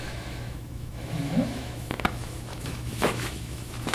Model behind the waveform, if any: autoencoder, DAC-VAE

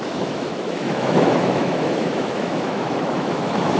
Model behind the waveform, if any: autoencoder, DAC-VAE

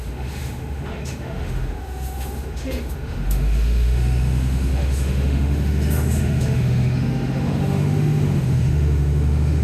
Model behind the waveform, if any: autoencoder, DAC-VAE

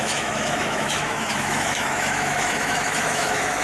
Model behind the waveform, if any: autoencoder, DAC-VAE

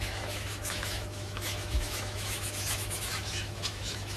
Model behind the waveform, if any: autoencoder, DAC-VAE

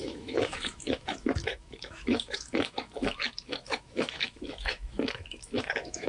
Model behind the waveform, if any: autoencoder, DAC-VAE